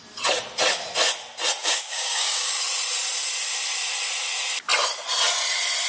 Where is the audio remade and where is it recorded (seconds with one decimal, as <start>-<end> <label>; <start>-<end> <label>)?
0.0-1.6 recorded; 1.6-2.5 remade; 2.5-5.9 recorded